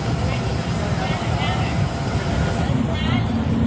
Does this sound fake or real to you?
real